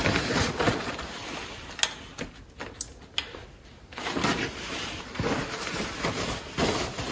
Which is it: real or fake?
real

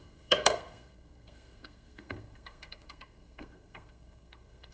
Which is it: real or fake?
fake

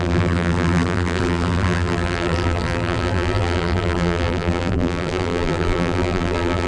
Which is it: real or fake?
fake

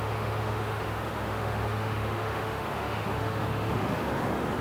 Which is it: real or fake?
fake